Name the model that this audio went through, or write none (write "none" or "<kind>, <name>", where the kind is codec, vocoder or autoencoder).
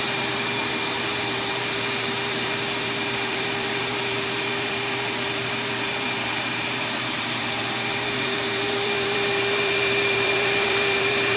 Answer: vocoder, BigVGAN v2